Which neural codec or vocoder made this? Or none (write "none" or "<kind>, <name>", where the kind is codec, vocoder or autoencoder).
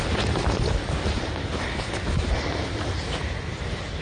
none